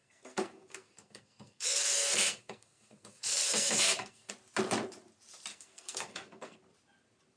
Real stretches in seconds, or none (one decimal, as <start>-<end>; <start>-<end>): 4.3-5.5; 6.6-7.4